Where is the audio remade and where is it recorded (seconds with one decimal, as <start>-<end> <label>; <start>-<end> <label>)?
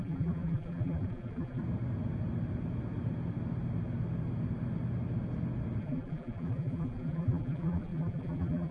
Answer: 0.0-1.6 remade; 1.6-5.8 recorded; 5.8-8.7 remade